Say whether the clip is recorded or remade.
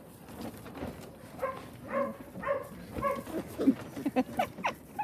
recorded